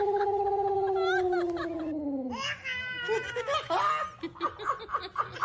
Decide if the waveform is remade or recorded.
recorded